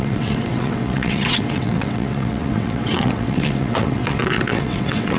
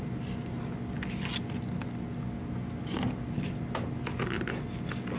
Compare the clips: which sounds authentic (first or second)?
second